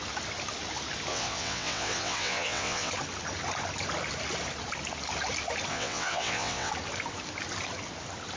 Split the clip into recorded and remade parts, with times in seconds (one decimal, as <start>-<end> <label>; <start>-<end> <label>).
0.0-1.1 recorded; 1.1-2.9 remade; 2.9-5.7 recorded; 5.7-6.7 remade; 6.7-8.4 recorded